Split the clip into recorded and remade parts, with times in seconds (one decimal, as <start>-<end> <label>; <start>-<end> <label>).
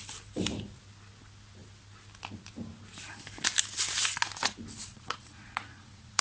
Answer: 0.0-4.9 recorded; 4.9-6.2 remade